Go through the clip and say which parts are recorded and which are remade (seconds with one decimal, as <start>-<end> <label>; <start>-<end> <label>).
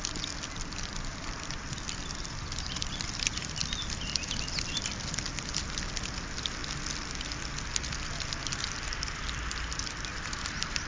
0.0-6.6 remade; 6.6-8.3 recorded; 8.3-10.9 remade